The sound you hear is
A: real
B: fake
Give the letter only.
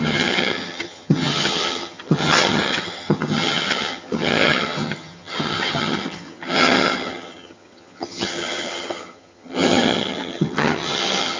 B